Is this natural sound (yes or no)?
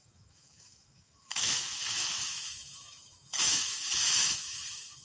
no